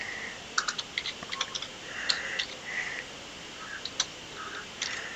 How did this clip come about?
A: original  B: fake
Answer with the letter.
A